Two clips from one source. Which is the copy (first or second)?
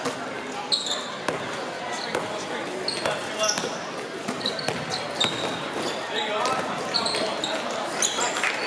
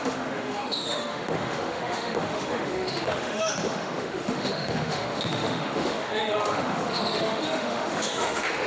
second